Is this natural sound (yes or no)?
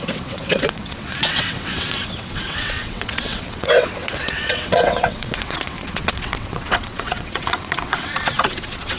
no